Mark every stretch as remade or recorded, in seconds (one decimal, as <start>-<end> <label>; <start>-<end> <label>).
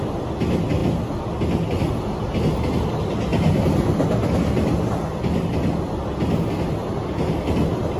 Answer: 0.0-8.0 recorded